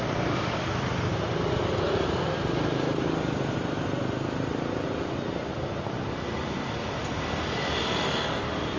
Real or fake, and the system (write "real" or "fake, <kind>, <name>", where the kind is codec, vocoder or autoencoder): real